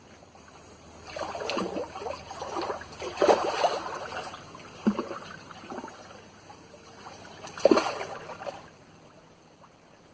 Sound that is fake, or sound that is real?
real